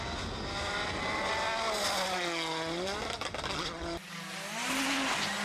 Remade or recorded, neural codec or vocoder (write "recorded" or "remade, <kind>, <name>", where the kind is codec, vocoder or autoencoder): recorded